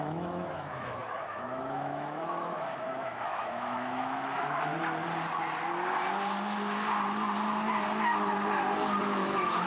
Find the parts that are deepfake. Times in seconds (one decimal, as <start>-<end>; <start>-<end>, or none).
0.0-4.7; 9.0-9.7